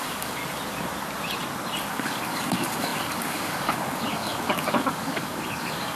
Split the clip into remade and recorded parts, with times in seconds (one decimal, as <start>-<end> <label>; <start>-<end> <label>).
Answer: 0.0-0.4 remade; 0.4-1.9 recorded; 1.9-6.0 remade